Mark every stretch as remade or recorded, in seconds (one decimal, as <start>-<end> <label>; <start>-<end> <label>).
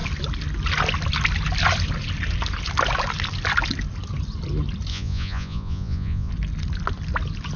0.0-4.9 recorded; 4.9-6.3 remade; 6.3-7.6 recorded